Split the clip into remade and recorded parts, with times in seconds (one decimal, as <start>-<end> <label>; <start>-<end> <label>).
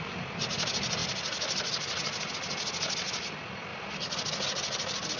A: 0.0-5.2 recorded